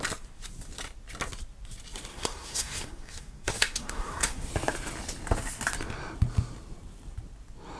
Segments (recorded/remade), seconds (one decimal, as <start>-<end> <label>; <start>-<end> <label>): 0.0-2.1 recorded; 2.1-4.5 remade; 4.5-7.8 recorded